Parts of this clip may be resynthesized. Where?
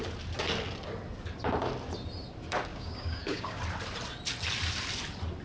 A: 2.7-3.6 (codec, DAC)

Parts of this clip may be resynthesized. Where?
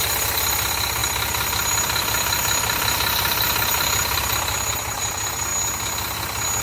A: 0.0-5.5 (vocoder, BigVGAN v2)